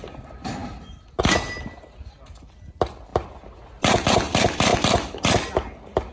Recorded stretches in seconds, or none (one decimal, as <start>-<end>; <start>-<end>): 0.0-6.1